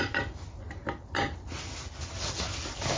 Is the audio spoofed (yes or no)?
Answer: no